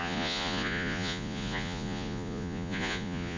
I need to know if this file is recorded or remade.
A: remade